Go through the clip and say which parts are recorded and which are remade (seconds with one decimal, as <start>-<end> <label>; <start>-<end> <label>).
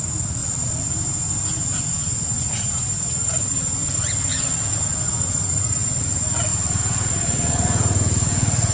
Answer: 0.0-0.4 remade; 0.4-0.9 recorded; 0.9-8.7 remade